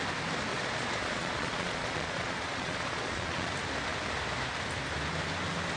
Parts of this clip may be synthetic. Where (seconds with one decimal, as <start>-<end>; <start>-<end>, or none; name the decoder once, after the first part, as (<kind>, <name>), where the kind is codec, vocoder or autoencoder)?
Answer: 0.5-3.5 (vocoder, Vocos)